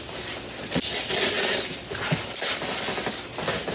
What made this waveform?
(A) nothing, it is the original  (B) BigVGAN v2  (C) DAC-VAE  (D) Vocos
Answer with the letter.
A